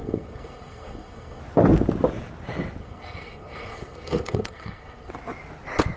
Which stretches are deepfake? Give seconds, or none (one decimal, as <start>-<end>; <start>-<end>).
0.0-1.4; 2.8-5.1